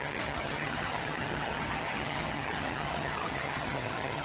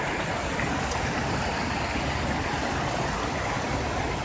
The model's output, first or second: first